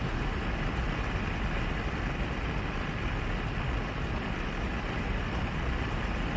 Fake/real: real